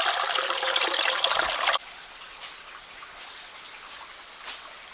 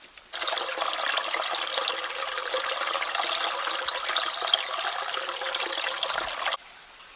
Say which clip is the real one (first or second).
second